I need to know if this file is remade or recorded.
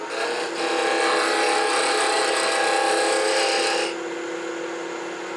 recorded